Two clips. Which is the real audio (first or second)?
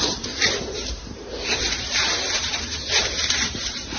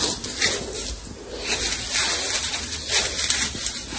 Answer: second